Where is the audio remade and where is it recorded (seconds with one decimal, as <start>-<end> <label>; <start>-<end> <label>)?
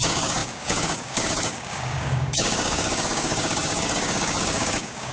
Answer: 0.0-5.1 remade